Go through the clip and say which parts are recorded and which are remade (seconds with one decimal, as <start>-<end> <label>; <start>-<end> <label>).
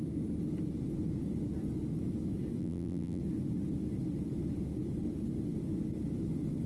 0.0-2.6 recorded; 2.6-3.2 remade; 3.2-6.7 recorded